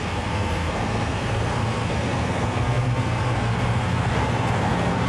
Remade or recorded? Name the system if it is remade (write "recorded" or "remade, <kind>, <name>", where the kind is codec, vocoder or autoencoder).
remade, codec, SNAC